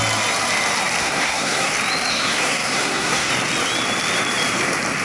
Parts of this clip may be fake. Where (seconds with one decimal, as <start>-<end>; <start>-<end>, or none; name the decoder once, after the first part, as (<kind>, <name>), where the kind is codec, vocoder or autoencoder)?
1.0-1.7 (codec, SNAC); 2.1-3.3